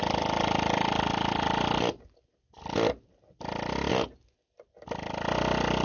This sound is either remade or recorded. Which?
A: recorded